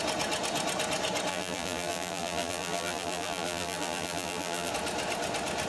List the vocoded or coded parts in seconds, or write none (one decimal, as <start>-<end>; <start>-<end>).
1.3-4.7